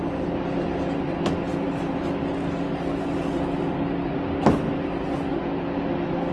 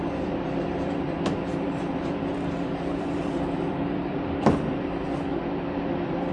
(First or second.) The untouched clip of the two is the first